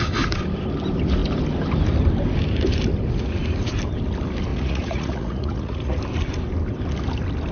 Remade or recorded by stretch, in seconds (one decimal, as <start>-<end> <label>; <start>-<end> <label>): 0.0-4.5 recorded; 4.5-6.0 remade; 6.0-7.5 recorded